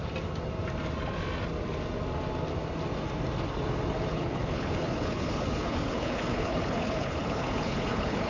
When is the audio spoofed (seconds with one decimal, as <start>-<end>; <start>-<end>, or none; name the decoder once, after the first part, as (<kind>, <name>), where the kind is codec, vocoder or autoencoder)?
4.1-8.3 (codec, HILCodec)